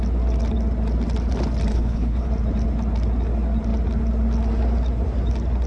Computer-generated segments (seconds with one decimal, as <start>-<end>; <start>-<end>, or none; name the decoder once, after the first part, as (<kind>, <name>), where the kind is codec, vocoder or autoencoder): 1.7-2.3 (codec, HILCodec)

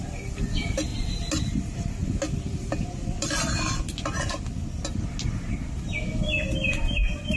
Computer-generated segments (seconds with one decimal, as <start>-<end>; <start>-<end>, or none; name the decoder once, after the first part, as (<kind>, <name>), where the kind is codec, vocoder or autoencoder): none

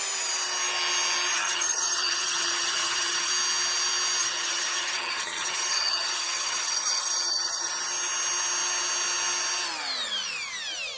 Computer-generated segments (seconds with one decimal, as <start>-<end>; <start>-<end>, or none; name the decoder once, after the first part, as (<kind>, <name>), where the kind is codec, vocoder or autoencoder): 1.3-3.3 (vocoder, HiFi-GAN); 4.2-7.7